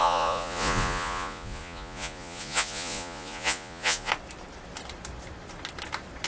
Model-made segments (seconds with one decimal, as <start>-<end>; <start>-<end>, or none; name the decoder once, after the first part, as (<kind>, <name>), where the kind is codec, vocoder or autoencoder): 0.0-4.1 (vocoder, Vocos)